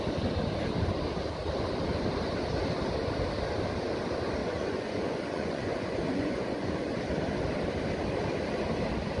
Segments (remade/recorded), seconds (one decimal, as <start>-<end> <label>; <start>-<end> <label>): 0.0-4.4 recorded; 4.4-7.0 remade; 7.0-9.2 recorded